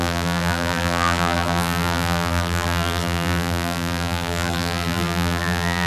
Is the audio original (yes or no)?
no